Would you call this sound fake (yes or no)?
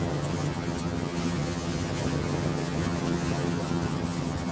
yes